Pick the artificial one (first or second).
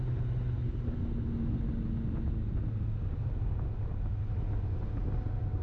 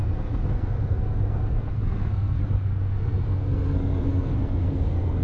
second